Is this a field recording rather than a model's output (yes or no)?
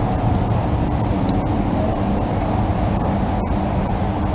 yes